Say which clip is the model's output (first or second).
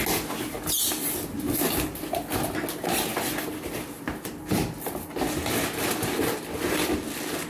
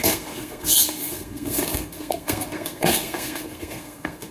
second